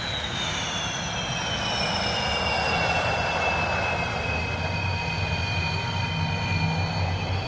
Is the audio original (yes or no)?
yes